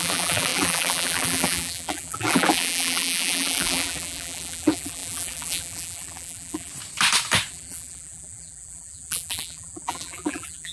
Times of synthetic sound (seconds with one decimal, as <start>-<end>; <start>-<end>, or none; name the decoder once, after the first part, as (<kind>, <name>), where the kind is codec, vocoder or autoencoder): 0.0-6.7 (vocoder, BigVGAN v2); 7.5-10.7